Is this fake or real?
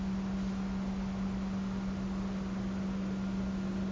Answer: real